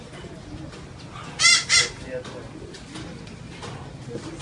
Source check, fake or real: real